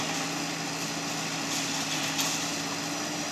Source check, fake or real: real